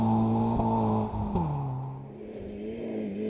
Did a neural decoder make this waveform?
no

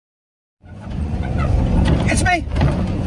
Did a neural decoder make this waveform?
yes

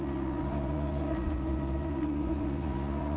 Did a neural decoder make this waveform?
yes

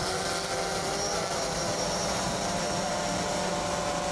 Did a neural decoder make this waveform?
no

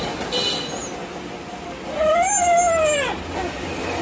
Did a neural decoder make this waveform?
no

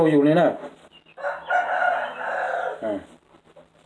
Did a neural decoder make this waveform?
no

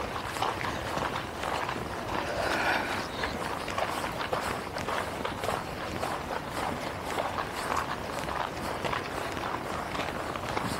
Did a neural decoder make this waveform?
no